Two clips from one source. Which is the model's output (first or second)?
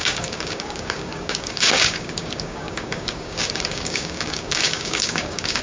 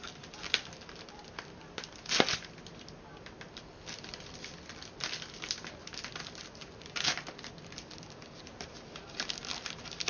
first